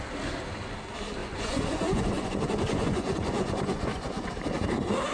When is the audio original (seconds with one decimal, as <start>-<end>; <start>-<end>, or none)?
0.0-1.2; 4.3-5.1